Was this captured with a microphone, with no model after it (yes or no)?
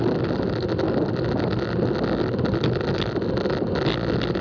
yes